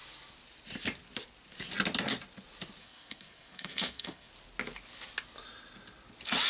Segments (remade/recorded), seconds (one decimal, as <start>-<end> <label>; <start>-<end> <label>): 0.0-2.8 recorded; 2.8-4.3 remade; 4.3-6.5 recorded